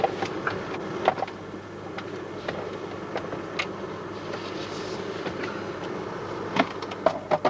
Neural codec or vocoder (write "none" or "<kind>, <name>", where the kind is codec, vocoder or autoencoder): none